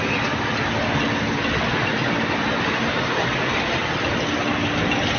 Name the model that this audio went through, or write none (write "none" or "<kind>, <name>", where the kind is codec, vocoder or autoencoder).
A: none